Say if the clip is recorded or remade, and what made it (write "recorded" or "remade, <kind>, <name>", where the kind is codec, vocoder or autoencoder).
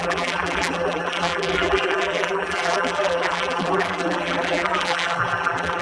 remade, vocoder, BigVGAN v2